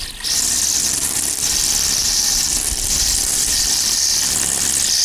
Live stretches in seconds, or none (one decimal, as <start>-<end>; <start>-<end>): 0.0-0.8; 1.5-2.0; 3.6-5.0